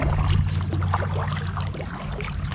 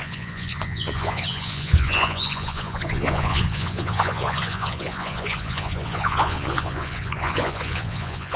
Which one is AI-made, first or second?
second